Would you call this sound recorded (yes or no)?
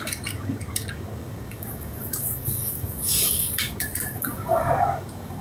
no